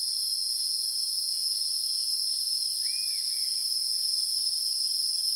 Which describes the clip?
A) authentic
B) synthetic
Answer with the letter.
A